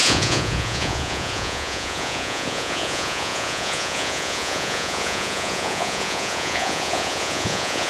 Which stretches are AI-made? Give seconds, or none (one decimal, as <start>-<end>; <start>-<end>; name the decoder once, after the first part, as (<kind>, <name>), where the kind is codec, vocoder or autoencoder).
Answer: 0.0-7.9 (vocoder, Vocos)